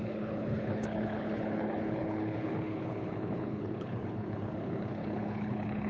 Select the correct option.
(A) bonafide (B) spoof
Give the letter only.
B